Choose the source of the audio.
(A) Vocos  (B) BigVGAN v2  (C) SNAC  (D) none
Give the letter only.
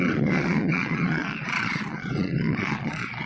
A